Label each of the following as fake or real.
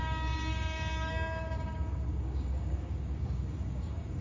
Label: fake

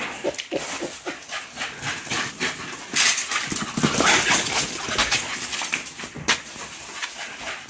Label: real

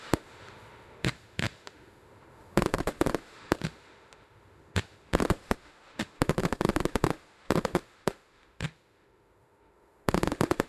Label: fake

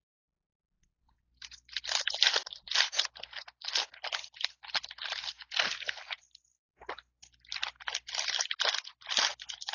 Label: real